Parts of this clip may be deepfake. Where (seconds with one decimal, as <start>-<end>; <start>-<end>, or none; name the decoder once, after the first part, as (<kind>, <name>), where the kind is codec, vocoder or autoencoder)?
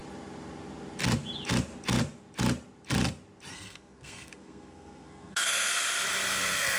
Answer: 3.5-5.7 (codec, SNAC); 6.3-6.8